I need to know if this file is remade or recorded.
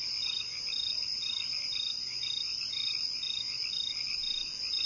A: recorded